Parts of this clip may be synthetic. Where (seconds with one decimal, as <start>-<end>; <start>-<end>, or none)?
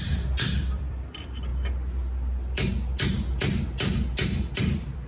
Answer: 0.0-1.5; 4.6-5.1